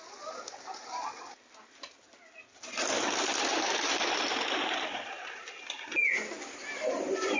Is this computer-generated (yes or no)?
no